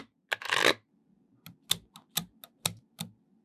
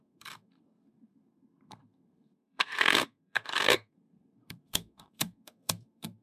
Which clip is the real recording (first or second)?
first